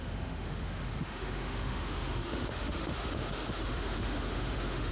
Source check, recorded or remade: remade